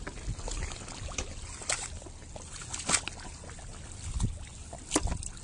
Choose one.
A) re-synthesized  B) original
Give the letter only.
B